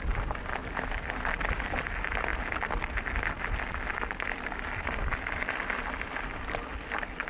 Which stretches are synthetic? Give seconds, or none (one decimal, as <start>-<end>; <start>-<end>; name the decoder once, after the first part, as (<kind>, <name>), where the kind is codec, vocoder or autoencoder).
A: none